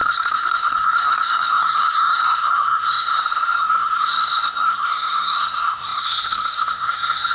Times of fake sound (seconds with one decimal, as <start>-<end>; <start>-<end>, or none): 0.0-7.3